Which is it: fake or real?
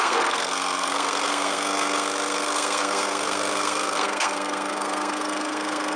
fake